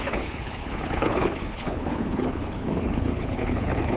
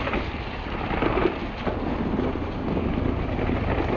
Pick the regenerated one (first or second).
first